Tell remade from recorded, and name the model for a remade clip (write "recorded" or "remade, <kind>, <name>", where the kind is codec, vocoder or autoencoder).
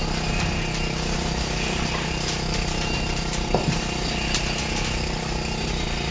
recorded